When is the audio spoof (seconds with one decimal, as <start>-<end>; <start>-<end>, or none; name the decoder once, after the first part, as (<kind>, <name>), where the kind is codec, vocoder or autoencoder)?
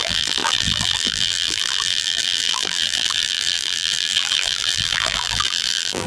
0.0-6.1 (vocoder, BigVGAN v2)